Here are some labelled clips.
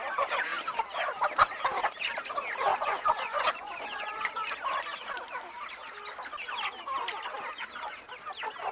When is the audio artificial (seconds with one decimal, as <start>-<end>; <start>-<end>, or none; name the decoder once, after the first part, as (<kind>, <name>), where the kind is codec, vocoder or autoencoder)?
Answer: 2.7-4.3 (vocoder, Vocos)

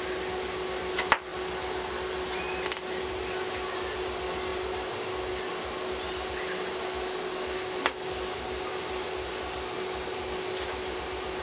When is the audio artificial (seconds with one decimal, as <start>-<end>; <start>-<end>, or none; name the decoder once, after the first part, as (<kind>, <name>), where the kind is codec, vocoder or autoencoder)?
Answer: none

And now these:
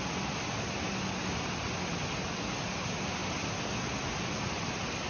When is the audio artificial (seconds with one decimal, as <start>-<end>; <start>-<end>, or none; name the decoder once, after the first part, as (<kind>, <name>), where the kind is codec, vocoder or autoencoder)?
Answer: none

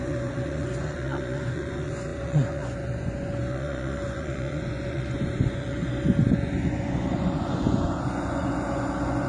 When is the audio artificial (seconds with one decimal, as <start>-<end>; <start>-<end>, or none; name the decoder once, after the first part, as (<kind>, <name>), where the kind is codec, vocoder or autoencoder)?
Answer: 0.0-5.8 (vocoder, Vocos); 6.3-9.3

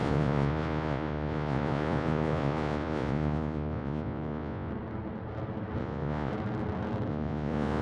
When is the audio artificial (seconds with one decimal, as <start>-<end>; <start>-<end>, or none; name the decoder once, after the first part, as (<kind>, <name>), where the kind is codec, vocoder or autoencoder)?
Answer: 0.0-4.7 (vocoder, Vocos); 5.8-6.3; 7.1-7.8